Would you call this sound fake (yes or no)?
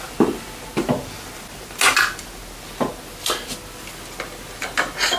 no